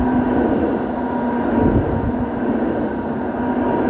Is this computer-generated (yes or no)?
no